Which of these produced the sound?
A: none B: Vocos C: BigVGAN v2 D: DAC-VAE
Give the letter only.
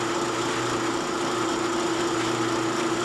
A